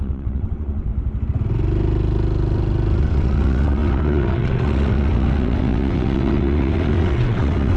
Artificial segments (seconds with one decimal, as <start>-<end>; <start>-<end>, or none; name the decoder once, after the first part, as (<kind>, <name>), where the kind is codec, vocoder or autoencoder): 0.0-0.9 (vocoder, WaveNeXt); 3.0-7.8